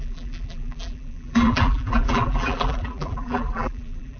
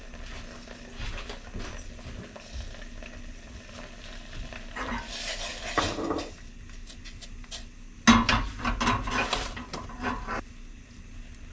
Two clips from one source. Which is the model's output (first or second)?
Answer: first